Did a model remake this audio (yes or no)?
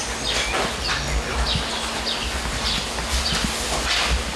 no